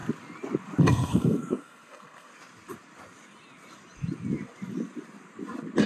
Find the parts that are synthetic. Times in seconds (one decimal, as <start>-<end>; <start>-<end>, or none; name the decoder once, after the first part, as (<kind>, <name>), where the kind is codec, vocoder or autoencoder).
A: 0.8-2.3 (codec, SNAC)